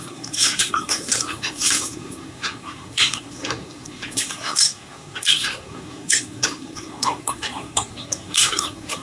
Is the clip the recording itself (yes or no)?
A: no